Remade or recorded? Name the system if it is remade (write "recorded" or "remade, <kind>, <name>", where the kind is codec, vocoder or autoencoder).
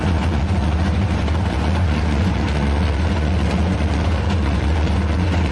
remade, vocoder, Vocos